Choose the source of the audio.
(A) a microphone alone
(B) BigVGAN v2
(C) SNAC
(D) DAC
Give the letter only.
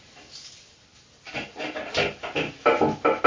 A